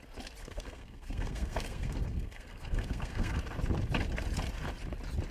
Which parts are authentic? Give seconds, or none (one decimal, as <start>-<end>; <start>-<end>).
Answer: 0.0-0.4; 3.4-5.3